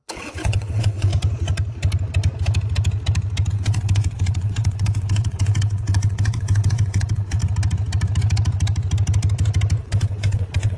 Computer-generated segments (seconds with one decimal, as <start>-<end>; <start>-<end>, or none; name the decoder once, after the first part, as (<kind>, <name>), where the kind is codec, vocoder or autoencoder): 0.0-1.1 (vocoder, WaveNeXt); 3.5-7.4; 9.8-10.8